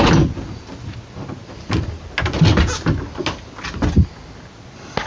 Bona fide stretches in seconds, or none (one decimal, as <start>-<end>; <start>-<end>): 0.0-5.1